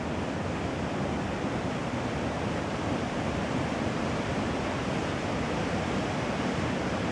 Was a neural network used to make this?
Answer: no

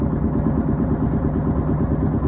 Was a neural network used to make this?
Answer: no